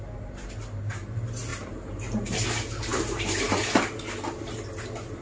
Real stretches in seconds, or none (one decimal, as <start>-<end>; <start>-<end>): 0.0-5.2

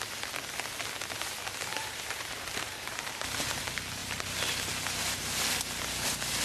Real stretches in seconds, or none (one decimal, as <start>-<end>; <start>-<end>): 0.0-1.7; 3.6-6.4